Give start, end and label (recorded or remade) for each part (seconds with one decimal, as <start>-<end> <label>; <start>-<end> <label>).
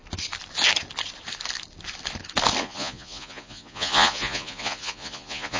0.0-2.6 recorded; 2.6-5.6 remade